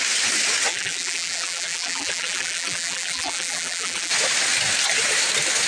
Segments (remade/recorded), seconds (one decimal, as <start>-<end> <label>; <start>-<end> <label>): 0.0-0.7 recorded; 0.7-4.1 remade; 4.1-5.7 recorded